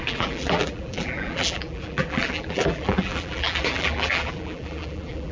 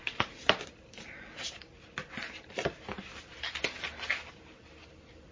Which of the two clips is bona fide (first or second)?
second